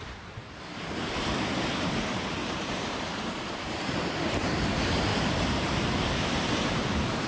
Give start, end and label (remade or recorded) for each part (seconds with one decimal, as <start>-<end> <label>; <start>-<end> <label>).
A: 0.0-7.3 remade